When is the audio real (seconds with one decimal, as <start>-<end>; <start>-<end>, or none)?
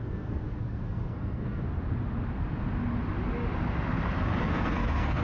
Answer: 1.6-4.4